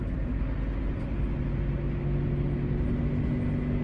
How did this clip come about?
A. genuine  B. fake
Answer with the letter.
A